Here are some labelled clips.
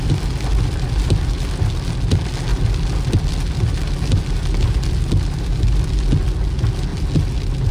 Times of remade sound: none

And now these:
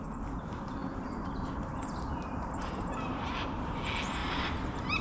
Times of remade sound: 0.8-3.8 (vocoder, BigVGAN v2); 4.2-5.0